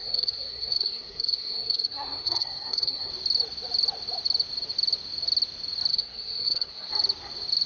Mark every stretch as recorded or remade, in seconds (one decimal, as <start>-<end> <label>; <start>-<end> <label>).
0.0-3.1 remade; 3.1-5.9 recorded; 5.9-6.9 remade; 6.9-7.7 recorded